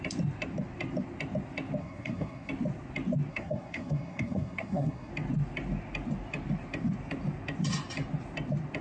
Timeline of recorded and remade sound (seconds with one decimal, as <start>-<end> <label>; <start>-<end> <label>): 0.0-1.8 recorded; 1.8-2.5 remade; 2.5-3.3 recorded; 3.3-5.1 remade; 5.1-8.8 recorded